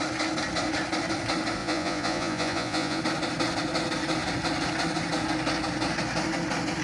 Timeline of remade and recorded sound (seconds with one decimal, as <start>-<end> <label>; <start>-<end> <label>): 0.0-1.6 recorded; 1.6-3.0 remade; 3.0-6.8 recorded